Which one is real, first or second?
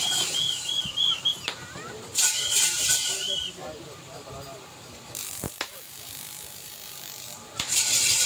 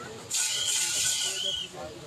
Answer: second